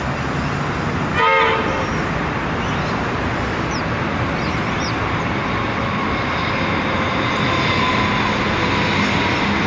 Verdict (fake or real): real